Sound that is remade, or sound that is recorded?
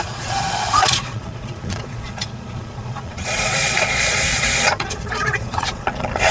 remade